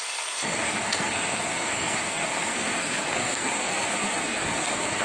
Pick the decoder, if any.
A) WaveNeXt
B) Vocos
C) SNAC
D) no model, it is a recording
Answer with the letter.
C